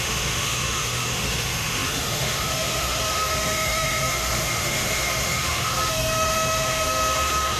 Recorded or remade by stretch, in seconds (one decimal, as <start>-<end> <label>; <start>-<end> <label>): 0.0-7.6 remade